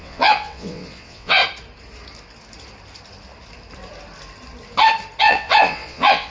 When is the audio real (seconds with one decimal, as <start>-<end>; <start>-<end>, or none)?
1.4-5.2